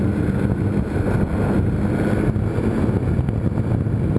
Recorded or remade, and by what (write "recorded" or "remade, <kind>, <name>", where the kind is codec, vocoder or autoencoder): recorded